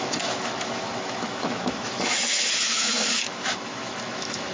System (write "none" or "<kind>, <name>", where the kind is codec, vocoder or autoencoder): autoencoder, DAC-VAE